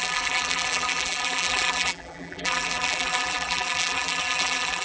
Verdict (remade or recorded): remade